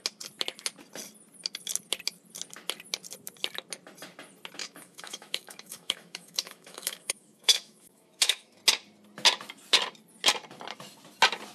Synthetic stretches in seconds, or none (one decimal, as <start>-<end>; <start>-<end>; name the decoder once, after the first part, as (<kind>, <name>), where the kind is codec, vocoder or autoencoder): 4.6-8.6 (autoencoder, DAC-VAE)